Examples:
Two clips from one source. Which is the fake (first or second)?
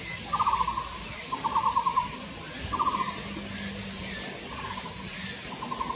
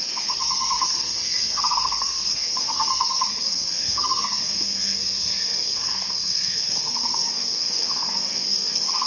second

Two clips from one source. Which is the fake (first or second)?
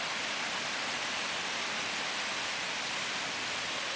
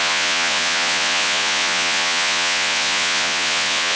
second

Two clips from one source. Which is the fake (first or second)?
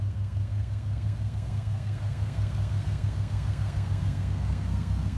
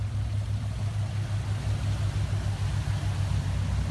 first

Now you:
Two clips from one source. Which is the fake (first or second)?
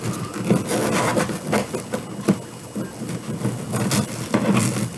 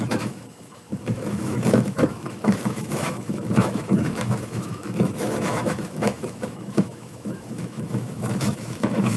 second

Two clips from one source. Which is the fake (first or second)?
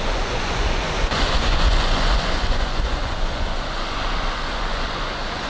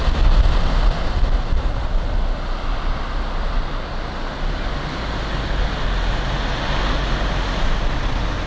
first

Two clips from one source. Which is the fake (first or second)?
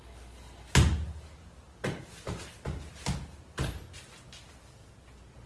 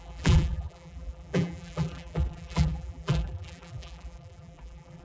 second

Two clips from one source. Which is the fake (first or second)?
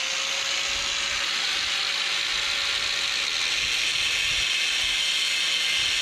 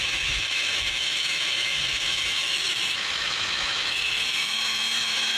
second